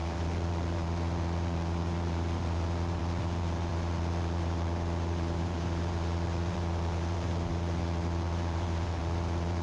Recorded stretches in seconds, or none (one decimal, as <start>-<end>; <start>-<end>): none